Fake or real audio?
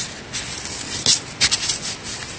real